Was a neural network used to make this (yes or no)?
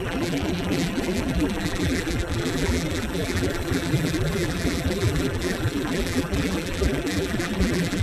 yes